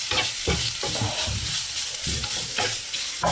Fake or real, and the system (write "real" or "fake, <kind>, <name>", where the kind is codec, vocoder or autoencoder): real